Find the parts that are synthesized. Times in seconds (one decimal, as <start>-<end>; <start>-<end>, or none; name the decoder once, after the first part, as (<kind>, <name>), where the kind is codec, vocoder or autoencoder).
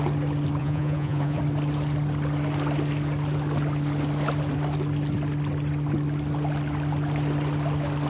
0.6-1.4 (vocoder, Vocos)